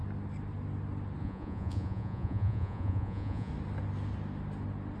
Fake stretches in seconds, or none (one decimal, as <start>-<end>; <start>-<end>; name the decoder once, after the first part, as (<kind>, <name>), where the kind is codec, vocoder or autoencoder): 1.2-3.5 (vocoder, Vocos)